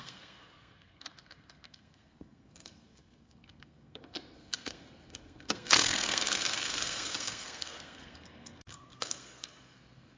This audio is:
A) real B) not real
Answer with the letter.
B